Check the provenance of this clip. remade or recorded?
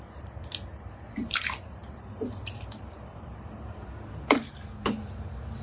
remade